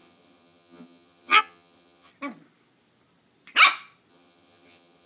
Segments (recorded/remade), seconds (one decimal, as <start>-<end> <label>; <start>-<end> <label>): 0.0-2.1 remade; 2.1-4.1 recorded; 4.1-5.1 remade